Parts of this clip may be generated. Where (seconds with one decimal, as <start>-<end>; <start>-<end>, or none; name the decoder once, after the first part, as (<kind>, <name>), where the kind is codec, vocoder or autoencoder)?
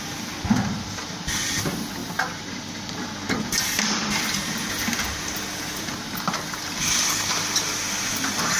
none